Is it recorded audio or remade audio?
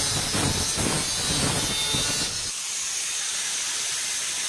recorded